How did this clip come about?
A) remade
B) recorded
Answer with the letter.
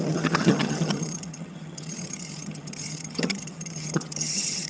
A